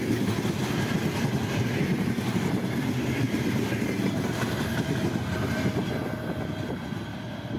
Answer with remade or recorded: recorded